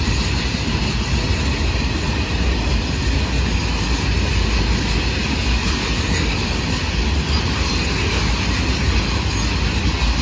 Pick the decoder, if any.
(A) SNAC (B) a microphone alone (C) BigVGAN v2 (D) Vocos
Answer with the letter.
B